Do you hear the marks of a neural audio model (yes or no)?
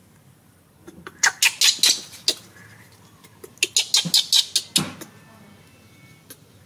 no